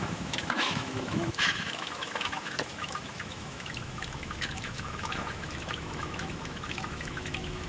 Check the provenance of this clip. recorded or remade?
remade